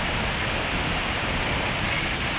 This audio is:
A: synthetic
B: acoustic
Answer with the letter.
B